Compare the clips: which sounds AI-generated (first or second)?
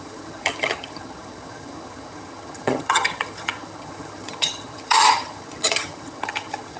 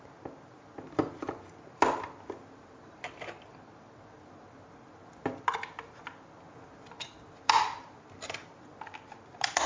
first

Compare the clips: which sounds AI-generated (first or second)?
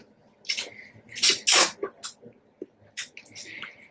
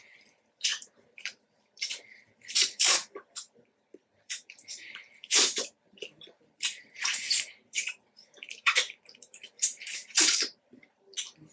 second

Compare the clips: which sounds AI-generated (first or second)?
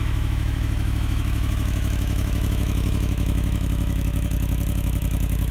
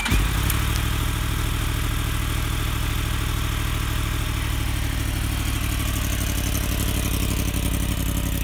first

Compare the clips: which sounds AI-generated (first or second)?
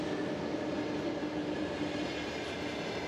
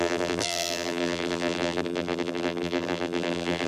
second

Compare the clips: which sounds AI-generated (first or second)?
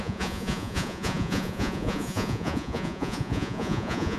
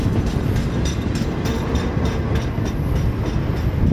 first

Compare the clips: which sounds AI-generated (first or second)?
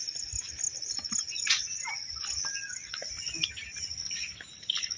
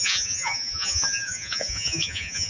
second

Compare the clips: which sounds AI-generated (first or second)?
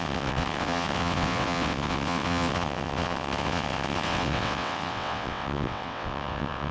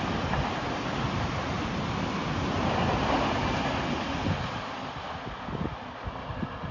first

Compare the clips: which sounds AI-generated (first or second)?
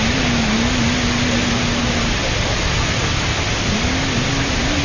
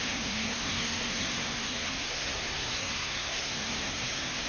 second